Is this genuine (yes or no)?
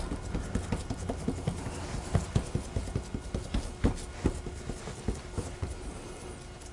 yes